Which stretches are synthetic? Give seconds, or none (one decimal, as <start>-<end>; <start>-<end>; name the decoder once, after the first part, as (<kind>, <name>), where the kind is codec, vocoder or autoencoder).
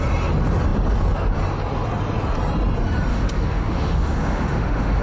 3.1-5.0 (autoencoder, DAC-VAE)